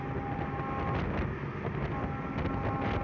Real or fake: real